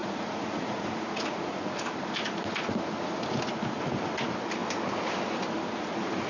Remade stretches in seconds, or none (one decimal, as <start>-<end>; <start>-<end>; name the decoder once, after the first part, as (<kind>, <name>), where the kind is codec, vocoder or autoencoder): 0.0-1.6 (vocoder, Vocos)